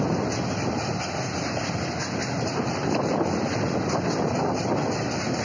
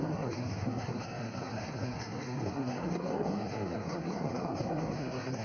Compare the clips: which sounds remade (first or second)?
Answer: second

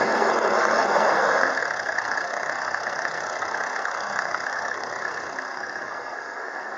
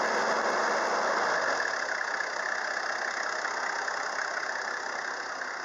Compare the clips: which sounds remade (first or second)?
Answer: first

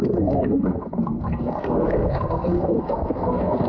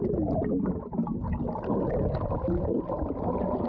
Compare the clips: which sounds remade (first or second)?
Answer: first